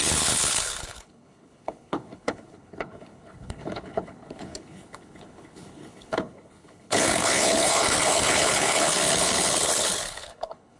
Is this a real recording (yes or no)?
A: no